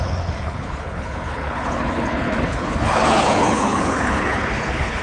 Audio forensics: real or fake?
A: fake